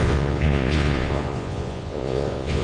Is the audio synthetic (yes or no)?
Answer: yes